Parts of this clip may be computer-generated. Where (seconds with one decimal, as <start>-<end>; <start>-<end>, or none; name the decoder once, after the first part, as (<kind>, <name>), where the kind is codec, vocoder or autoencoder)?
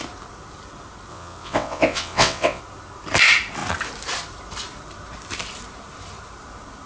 1.1-2.6 (vocoder, WaveNeXt)